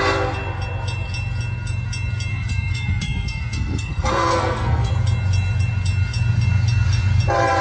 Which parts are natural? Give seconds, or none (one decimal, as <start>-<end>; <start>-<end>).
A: 0.0-2.3; 4.9-7.6